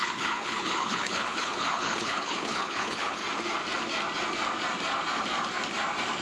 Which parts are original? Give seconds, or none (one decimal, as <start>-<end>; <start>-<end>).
3.2-6.2